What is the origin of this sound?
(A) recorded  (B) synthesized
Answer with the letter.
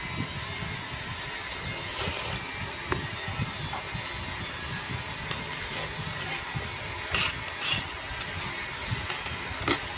A